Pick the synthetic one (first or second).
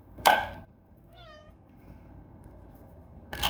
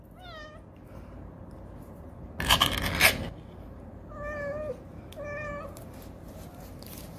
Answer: first